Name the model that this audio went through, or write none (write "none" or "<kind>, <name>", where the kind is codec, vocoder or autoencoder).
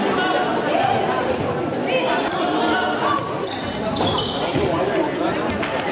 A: none